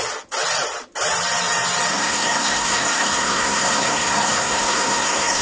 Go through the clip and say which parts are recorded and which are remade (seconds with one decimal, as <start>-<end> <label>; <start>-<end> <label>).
0.0-1.9 recorded; 1.9-5.4 remade